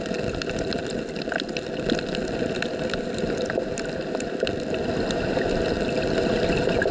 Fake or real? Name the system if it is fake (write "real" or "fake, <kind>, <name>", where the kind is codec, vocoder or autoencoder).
real